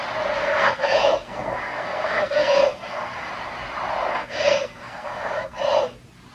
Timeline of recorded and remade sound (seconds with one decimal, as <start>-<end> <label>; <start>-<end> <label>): 0.0-0.4 recorded; 0.4-3.3 remade; 3.3-4.1 recorded; 4.1-5.6 remade; 5.6-6.3 recorded